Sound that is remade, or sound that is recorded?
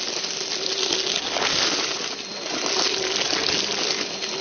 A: recorded